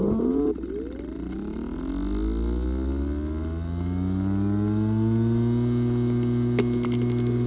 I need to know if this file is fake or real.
real